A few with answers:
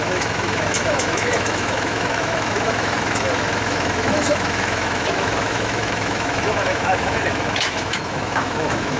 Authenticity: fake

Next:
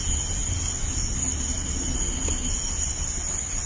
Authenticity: real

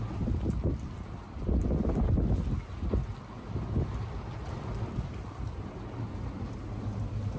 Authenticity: real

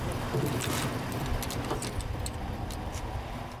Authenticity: real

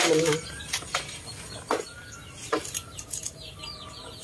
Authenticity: real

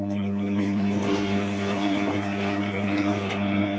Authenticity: fake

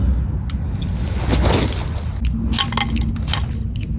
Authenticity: real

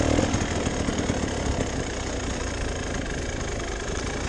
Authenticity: real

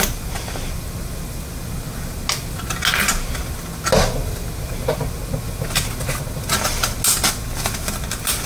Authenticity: real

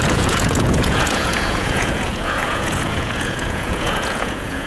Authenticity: fake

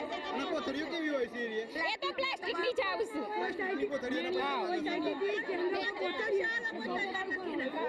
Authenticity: real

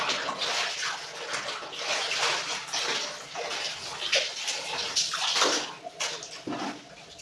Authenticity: real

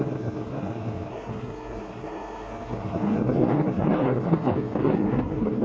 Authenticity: fake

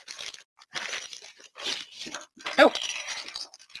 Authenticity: real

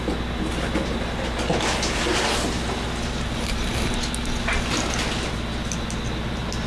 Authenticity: real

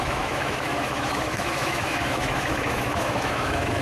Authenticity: fake